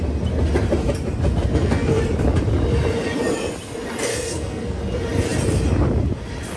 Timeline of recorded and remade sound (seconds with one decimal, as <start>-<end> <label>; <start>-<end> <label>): 0.0-1.5 recorded; 1.5-2.0 remade; 2.0-4.1 recorded; 4.1-4.8 remade; 4.8-6.6 recorded